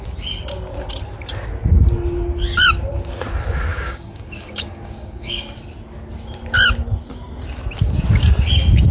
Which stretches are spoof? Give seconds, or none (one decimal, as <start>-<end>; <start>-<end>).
3.7-5.4